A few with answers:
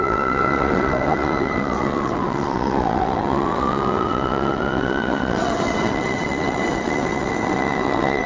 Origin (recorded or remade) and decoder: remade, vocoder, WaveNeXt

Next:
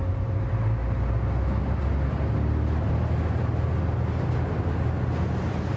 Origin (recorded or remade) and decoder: recorded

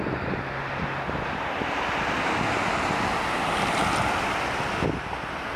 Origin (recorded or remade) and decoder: recorded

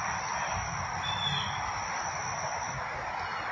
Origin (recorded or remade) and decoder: recorded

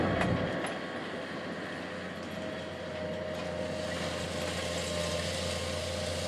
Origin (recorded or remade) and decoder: recorded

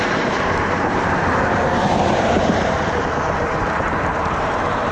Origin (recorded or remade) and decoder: remade, vocoder, BigVGAN v2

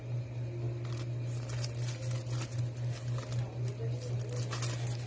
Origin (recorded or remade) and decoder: recorded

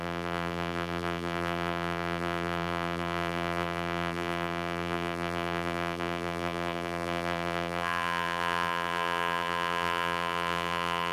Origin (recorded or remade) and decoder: remade, vocoder, BigVGAN v2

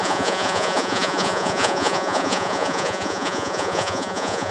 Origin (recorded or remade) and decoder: remade, vocoder, Vocos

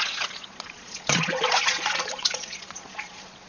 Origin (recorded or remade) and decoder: remade, vocoder, Vocos